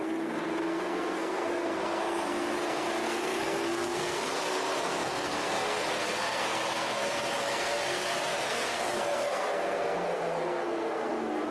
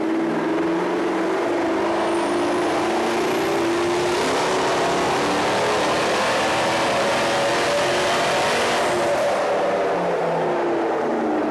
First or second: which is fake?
first